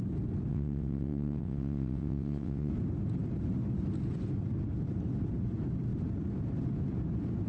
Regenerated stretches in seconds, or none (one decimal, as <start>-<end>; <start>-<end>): 0.5-2.7